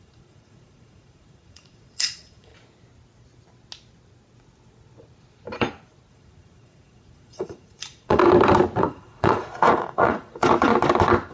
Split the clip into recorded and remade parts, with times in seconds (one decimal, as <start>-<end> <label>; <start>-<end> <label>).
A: 0.0-2.5 remade; 2.5-6.1 recorded; 6.1-8.2 remade; 8.2-8.8 recorded; 8.8-10.7 remade; 10.7-11.3 recorded